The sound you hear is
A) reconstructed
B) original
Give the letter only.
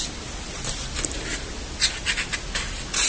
B